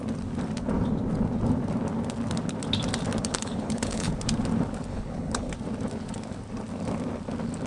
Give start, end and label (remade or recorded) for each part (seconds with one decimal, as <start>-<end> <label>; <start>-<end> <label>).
0.0-3.2 recorded; 3.2-4.1 remade; 4.1-4.9 recorded; 4.9-5.5 remade; 5.5-7.7 recorded